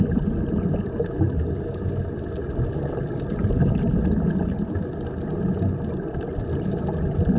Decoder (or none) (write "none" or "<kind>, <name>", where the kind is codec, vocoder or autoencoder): none